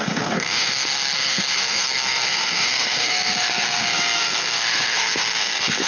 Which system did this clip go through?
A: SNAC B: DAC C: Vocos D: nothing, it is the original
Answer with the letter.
A